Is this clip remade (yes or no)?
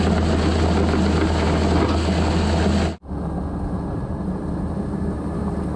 no